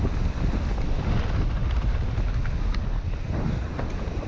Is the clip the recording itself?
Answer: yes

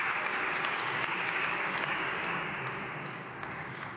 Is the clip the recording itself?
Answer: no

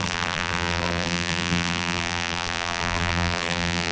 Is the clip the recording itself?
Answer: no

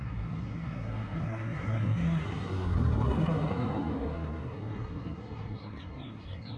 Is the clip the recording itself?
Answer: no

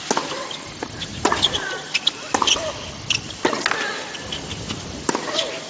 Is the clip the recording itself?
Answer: yes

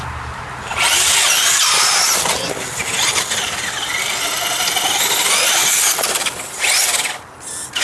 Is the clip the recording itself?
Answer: yes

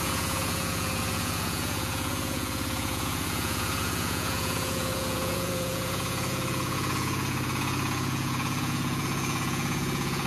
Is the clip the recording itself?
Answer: no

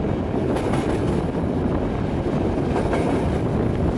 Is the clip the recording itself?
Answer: yes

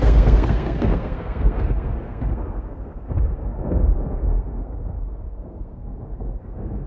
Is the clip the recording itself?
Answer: no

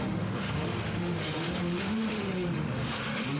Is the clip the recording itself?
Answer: no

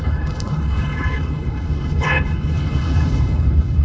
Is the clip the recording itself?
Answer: no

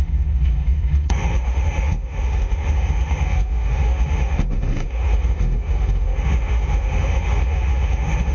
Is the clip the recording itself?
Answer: no